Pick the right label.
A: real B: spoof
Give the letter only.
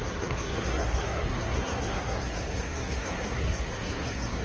B